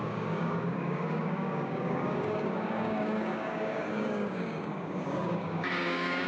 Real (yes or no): no